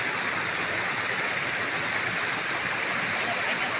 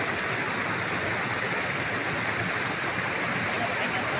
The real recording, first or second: second